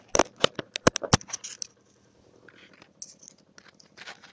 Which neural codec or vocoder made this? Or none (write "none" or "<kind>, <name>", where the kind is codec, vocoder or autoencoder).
none